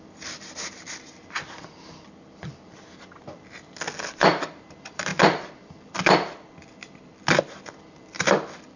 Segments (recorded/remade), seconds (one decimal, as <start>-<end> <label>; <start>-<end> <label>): 0.0-8.8 remade

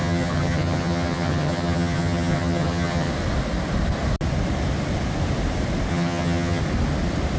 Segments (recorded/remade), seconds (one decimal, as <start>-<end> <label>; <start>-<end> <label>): 0.0-3.1 remade; 3.1-5.9 recorded; 5.9-6.6 remade; 6.6-7.4 recorded